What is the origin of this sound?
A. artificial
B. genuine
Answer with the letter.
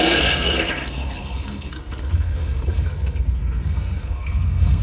A